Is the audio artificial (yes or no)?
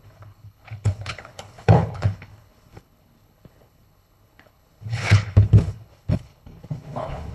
yes